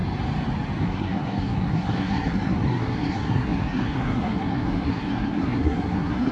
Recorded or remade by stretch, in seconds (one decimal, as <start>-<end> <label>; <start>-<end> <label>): 0.0-0.8 recorded; 0.8-6.3 remade